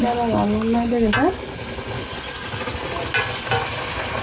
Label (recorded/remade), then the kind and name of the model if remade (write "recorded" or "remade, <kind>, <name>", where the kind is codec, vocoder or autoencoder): recorded